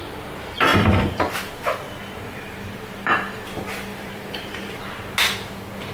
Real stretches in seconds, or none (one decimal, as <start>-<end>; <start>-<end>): 0.0-0.7; 1.5-3.9; 4.7-5.9

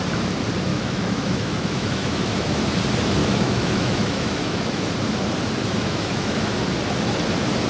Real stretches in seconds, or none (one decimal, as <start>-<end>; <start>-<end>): 0.0-0.7; 2.6-3.2; 4.9-5.6; 6.5-7.7

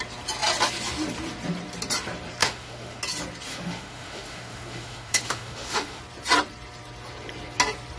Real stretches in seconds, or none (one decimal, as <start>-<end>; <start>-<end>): 0.0-2.4; 3.0-3.5; 6.0-8.0

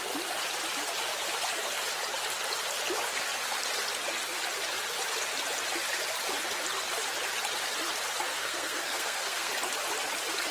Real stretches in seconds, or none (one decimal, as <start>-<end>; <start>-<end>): 0.0-8.3; 9.5-10.5

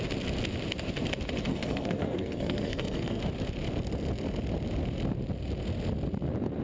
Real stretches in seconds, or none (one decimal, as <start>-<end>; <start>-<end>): 0.0-1.5; 3.2-6.6